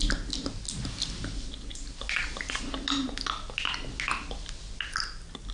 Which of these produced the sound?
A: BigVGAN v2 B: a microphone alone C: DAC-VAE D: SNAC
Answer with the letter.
B